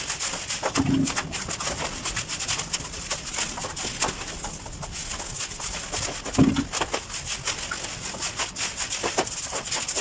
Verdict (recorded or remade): recorded